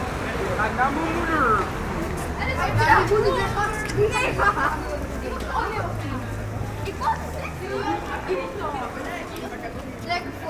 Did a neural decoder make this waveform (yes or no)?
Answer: no